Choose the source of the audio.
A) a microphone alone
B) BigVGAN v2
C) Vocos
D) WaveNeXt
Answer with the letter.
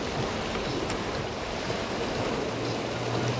A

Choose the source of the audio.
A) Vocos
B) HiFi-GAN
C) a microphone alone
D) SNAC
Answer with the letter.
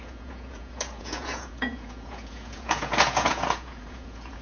A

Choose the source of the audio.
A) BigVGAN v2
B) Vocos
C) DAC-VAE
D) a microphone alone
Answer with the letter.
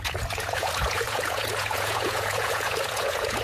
B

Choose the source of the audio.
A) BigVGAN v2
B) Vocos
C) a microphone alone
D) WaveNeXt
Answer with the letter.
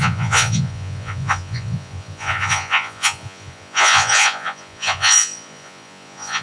B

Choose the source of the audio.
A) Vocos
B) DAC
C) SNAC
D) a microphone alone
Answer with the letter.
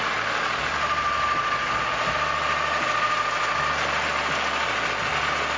D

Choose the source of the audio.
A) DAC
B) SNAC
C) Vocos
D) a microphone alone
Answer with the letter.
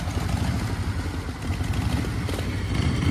D